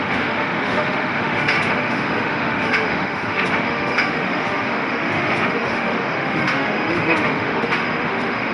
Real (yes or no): no